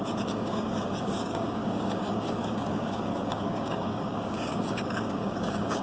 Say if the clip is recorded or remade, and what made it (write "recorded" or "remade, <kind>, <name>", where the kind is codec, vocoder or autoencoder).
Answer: remade, codec, DAC